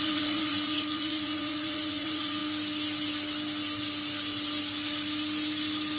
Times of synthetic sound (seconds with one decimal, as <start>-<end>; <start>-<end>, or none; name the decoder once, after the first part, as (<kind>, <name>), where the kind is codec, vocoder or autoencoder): 0.0-2.4 (vocoder, Vocos)